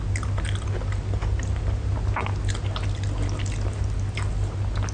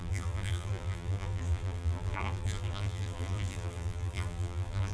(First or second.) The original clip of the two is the first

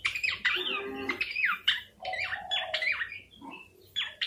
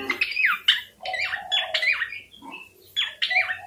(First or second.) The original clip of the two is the second